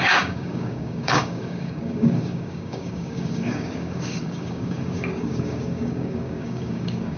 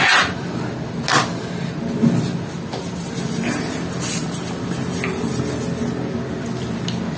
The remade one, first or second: first